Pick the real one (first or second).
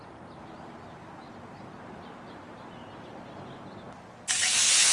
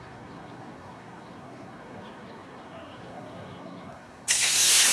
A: first